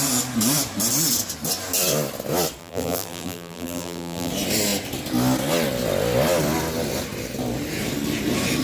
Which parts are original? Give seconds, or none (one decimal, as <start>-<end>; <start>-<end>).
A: 0.0-2.6; 4.3-8.6